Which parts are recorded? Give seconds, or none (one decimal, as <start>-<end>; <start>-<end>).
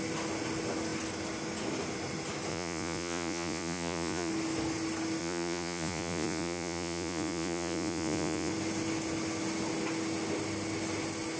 0.0-2.5; 4.3-5.2; 8.5-11.4